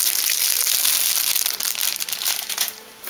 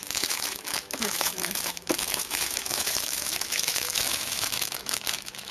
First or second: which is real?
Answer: first